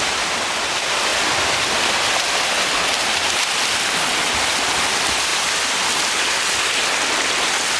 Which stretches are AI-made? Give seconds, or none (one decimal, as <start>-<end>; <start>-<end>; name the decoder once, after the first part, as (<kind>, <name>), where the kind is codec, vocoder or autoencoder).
none